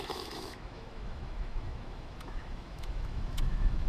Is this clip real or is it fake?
fake